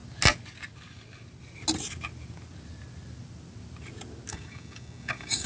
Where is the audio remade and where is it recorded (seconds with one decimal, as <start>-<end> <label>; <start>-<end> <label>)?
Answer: 0.0-4.3 recorded; 4.3-5.5 remade